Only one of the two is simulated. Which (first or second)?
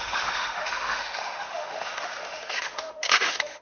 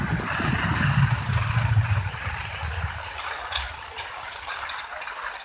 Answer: first